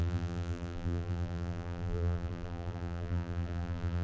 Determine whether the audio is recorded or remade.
remade